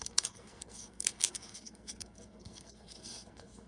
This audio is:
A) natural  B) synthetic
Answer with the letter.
B